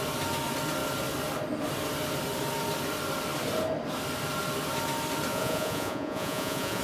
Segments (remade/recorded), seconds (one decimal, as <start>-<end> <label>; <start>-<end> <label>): 0.0-5.3 recorded; 5.3-6.8 remade